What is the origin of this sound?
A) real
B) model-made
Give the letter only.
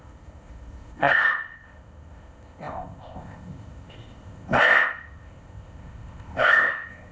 B